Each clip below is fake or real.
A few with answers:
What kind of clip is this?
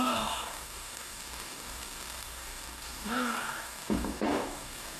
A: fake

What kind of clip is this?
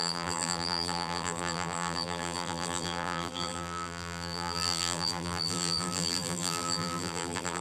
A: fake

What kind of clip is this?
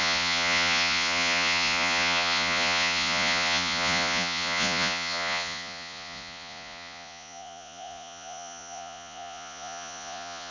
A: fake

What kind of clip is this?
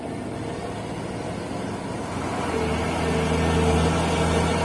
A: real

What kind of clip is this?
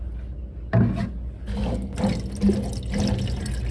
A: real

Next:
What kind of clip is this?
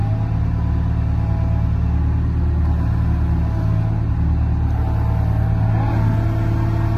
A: real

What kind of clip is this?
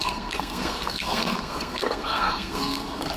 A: fake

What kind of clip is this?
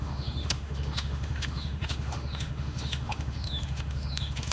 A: fake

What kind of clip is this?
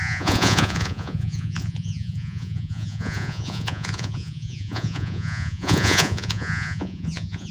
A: fake